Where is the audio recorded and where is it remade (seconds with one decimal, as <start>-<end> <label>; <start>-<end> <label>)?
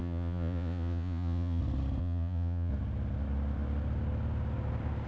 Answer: 0.0-1.6 remade; 1.6-2.0 recorded; 2.0-2.7 remade; 2.7-5.1 recorded